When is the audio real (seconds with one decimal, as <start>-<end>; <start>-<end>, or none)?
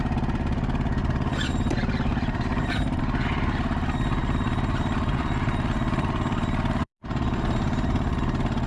0.0-1.0; 3.0-4.2; 8.2-8.7